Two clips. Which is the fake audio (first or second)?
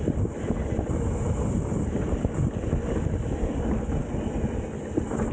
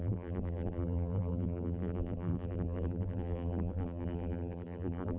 second